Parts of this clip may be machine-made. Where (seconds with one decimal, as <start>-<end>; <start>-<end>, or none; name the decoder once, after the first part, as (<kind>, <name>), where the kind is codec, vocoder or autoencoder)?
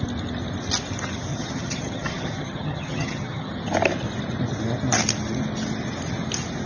1.3-3.5 (vocoder, HiFi-GAN)